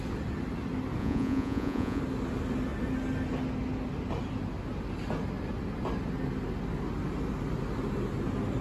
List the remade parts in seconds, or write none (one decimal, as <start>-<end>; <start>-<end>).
1.0-2.0